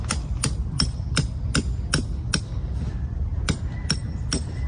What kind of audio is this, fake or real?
real